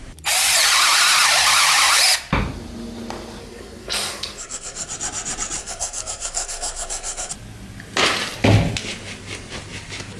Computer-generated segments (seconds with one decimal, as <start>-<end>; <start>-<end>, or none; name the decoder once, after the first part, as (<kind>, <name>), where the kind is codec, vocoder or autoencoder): 3.4-4.9 (codec, SNAC); 5.6-7.3